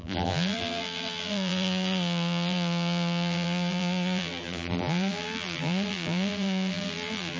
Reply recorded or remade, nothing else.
remade